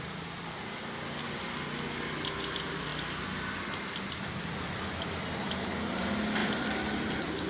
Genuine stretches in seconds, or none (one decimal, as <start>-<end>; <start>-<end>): 0.0-7.5

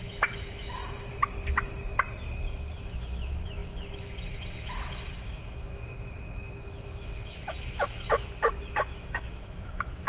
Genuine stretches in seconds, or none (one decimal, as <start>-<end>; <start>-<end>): 0.8-2.3

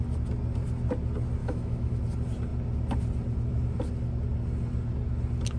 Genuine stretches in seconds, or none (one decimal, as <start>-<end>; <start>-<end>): 0.0-1.4; 2.0-5.6

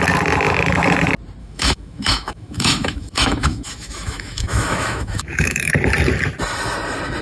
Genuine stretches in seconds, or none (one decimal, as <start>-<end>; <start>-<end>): 0.0-1.4; 5.7-7.2

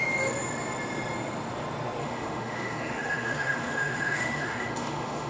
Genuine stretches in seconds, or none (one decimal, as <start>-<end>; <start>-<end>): 0.0-2.0

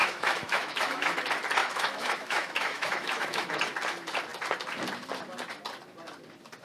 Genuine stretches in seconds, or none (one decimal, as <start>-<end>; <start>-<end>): 1.2-1.6; 3.6-6.6

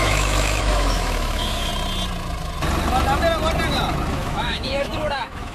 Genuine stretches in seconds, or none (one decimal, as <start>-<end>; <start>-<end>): 1.7-4.1

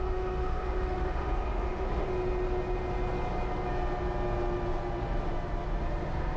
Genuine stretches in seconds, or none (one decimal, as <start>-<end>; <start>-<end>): 2.1-5.8